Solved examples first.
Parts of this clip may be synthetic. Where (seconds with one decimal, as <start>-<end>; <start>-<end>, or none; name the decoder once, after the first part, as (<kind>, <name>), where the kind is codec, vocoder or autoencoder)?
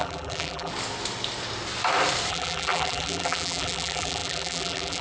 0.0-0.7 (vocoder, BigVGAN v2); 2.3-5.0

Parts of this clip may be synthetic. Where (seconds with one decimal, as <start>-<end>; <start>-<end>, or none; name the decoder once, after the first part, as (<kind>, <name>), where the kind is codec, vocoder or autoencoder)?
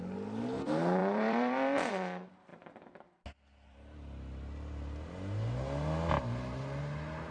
1.0-1.9 (vocoder, BigVGAN v2)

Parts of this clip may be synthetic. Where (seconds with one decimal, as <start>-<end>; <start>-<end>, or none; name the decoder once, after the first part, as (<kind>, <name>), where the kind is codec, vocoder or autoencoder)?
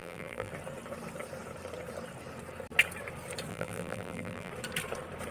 0.0-0.5 (vocoder, BigVGAN v2); 3.5-4.5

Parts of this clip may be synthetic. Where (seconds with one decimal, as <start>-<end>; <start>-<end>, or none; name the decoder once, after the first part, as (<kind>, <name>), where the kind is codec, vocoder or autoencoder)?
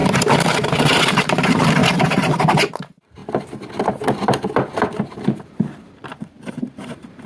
0.0-3.2 (vocoder, BigVGAN v2); 5.4-7.3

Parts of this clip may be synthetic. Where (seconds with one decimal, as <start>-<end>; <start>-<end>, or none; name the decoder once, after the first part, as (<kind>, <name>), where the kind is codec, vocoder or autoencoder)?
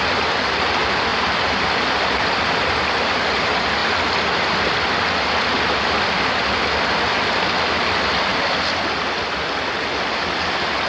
1.1-3.1 (vocoder, BigVGAN v2)